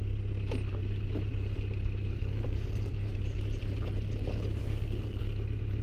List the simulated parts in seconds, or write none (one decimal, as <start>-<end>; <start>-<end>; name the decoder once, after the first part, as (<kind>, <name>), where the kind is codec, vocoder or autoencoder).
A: 2.1-3.1 (codec, SNAC); 4.6-5.2